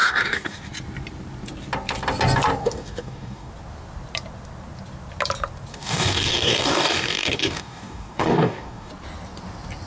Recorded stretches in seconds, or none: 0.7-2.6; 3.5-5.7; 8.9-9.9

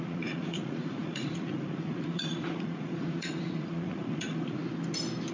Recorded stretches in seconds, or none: 4.6-5.3

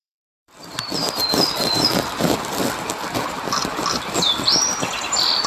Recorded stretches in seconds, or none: 3.3-5.5

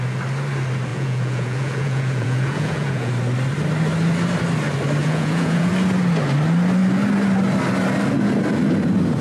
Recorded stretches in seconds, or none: 0.0-0.9; 3.1-5.0; 5.7-9.2

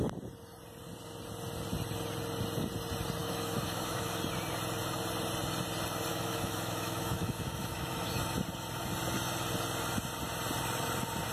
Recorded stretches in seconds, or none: 0.0-3.2; 4.2-6.1; 8.1-11.3